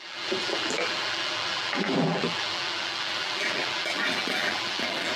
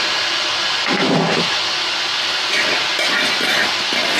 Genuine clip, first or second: second